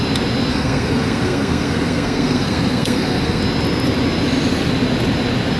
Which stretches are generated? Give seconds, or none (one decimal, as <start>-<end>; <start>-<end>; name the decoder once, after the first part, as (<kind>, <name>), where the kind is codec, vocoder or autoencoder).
0.5-3.4 (codec, SNAC)